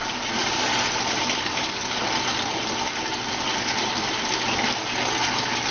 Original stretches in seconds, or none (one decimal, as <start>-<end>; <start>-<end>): 0.0-5.7